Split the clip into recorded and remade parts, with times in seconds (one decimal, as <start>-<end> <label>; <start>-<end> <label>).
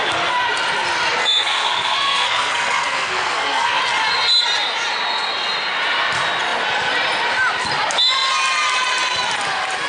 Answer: 0.0-1.2 recorded; 1.2-3.8 remade; 3.8-9.9 recorded